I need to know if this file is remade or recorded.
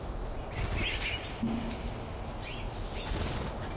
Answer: recorded